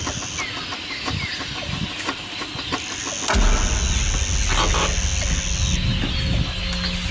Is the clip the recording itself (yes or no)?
yes